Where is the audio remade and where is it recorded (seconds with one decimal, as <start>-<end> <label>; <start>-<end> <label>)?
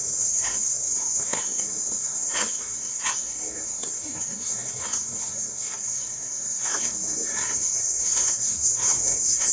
0.0-9.5 remade